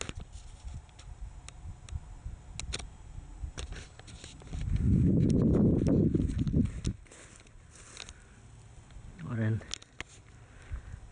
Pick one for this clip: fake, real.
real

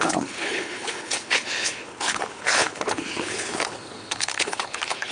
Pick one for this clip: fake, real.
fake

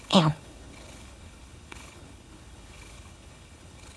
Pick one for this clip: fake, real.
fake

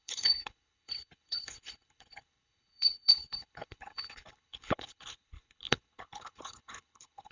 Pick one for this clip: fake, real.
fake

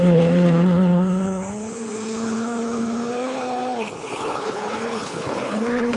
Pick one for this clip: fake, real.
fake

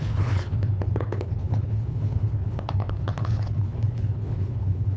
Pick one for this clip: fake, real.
fake